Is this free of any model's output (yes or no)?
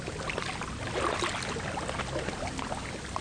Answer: yes